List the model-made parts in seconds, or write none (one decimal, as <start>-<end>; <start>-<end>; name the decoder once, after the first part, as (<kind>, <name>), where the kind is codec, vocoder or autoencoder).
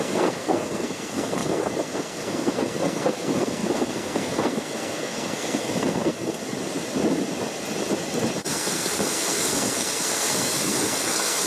0.0-6.4 (codec, SNAC); 8.4-11.5